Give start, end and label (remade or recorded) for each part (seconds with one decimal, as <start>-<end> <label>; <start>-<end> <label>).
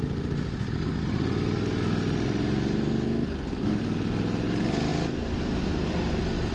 0.0-6.5 recorded